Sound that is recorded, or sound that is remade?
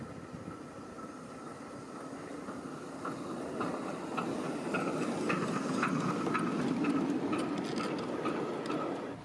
recorded